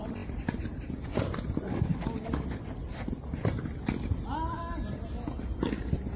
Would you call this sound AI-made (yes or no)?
no